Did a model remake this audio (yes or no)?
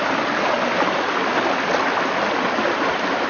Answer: no